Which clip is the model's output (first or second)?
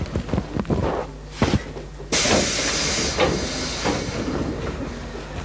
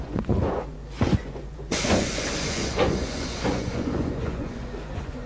second